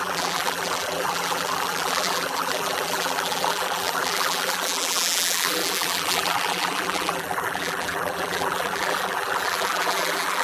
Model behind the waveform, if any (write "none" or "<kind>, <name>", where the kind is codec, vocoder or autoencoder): vocoder, BigVGAN v2